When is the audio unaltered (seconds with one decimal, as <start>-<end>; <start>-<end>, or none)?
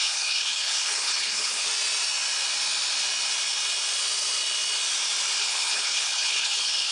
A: 1.7-5.4